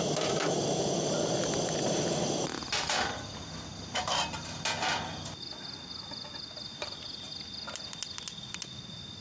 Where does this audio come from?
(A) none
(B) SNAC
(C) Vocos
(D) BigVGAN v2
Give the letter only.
A